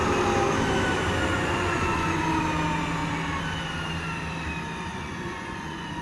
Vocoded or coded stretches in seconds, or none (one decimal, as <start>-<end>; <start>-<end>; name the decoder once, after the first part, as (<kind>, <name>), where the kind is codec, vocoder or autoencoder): 1.3-2.2 (vocoder, Vocos); 4.9-6.0